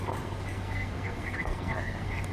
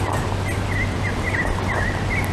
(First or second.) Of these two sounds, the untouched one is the second